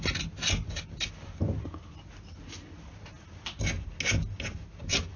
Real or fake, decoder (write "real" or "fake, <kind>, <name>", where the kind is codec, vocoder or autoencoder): real